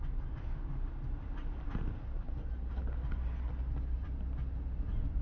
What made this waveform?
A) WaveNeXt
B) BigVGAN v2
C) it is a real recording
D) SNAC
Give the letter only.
C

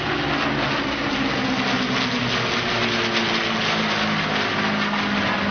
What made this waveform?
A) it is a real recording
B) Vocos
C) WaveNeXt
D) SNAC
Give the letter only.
A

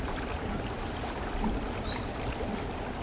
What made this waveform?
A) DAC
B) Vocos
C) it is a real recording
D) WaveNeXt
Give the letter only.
C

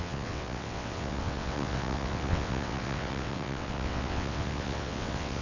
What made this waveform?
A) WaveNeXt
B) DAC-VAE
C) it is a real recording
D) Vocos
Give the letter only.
A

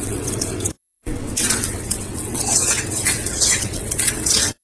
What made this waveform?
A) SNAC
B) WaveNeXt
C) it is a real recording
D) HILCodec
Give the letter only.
B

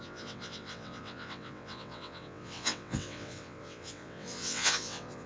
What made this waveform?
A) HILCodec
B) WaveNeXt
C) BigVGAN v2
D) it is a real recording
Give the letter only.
B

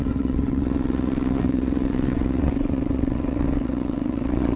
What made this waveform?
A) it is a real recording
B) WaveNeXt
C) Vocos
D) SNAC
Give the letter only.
B